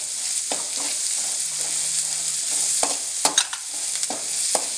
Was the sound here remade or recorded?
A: recorded